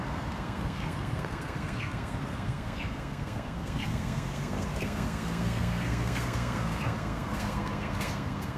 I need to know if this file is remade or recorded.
remade